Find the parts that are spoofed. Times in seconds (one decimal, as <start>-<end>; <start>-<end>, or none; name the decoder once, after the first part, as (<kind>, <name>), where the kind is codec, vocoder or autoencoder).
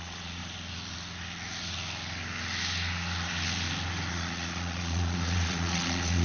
0.0-0.4 (vocoder, Vocos); 4.1-6.2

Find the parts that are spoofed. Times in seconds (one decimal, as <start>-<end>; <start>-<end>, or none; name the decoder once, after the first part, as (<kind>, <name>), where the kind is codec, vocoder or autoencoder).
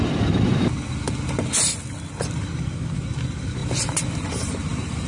none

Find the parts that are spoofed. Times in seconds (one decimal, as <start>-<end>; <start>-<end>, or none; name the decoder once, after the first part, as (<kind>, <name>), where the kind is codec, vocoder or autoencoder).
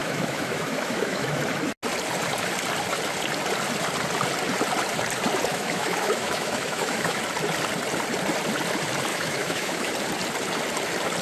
0.0-1.4 (autoencoder, DAC-VAE); 5.5-7.2; 9.1-9.9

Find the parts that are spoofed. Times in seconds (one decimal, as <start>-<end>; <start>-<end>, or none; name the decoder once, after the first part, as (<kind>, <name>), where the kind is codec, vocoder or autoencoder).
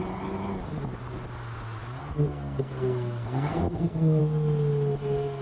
2.0-4.2 (codec, SNAC)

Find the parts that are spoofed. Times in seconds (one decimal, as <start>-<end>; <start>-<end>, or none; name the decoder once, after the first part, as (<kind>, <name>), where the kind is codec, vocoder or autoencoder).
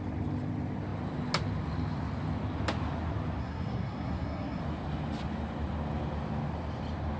3.4-4.6 (codec, SNAC)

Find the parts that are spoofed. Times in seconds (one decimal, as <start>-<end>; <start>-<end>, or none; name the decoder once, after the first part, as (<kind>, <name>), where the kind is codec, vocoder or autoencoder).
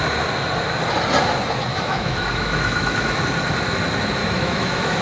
1.7-3.2 (autoencoder, DAC-VAE); 4.2-5.0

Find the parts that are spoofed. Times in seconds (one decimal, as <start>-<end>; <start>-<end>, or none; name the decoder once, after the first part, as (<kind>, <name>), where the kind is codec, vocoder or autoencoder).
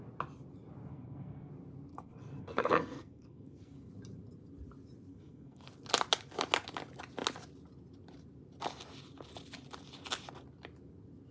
0.9-1.5 (codec, SNAC); 1.9-3.9; 5.1-5.7